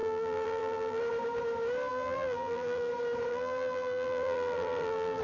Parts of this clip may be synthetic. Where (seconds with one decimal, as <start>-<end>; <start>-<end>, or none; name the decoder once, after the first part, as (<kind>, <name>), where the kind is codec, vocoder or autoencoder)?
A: 0.0-1.0 (vocoder, BigVGAN v2); 1.9-2.9; 3.3-5.2